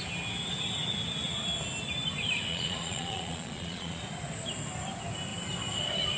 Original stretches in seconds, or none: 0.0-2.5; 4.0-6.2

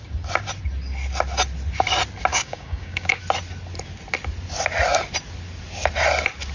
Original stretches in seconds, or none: 0.0-2.3; 3.2-6.5

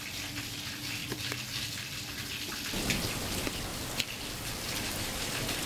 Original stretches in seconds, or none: 0.0-1.0; 2.7-3.7; 5.2-5.7

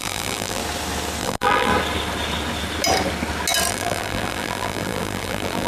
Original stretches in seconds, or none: 0.6-1.2; 1.7-3.7